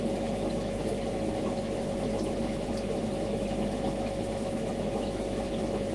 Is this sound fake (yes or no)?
yes